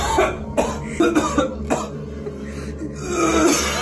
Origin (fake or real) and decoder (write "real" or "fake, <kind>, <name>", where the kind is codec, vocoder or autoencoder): real